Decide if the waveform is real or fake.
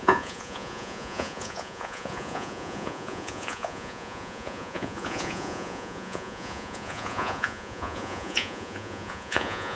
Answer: fake